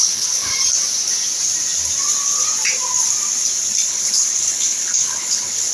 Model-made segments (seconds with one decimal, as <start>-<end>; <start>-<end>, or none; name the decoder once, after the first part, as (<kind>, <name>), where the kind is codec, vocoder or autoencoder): 0.0-0.5 (codec, HILCodec); 3.9-5.7